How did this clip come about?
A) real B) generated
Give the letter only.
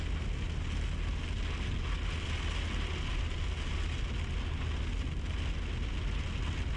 A